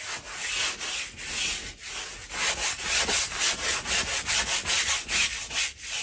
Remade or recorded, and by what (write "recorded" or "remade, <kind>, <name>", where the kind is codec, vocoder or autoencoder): recorded